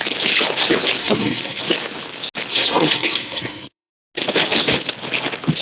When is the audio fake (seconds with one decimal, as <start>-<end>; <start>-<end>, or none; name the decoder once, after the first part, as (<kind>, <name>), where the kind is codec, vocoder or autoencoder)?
1.0-1.6 (codec, SNAC); 2.5-3.9